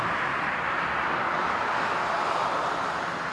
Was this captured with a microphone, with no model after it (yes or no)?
yes